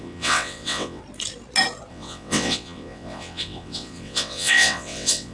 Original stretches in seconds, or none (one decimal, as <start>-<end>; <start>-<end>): 1.0-1.9